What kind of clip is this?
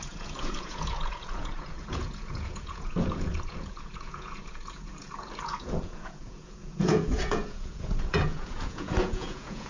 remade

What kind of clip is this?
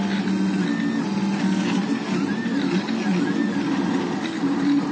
recorded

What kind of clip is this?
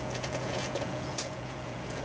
remade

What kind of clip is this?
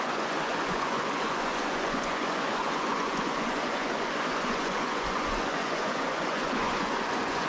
remade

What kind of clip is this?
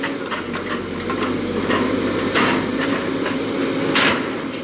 recorded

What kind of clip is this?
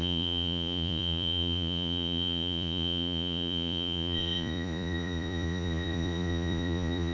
remade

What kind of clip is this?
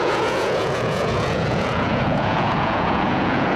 remade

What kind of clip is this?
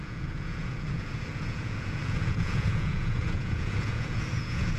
remade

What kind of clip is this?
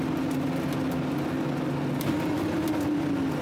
recorded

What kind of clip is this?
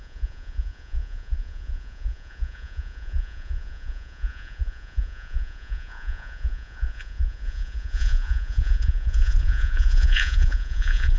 remade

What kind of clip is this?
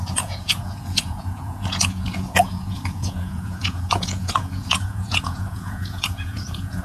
remade